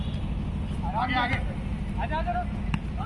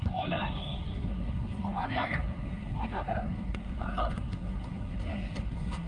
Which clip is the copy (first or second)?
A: second